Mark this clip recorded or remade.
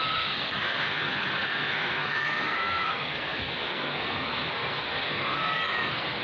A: remade